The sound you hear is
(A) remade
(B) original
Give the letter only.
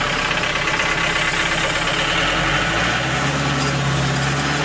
B